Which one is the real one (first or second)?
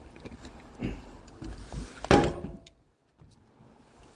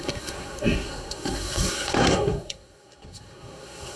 first